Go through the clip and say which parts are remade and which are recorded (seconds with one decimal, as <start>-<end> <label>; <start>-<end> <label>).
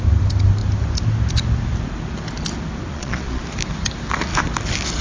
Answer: 0.0-2.9 recorded; 2.9-3.4 remade; 3.4-5.0 recorded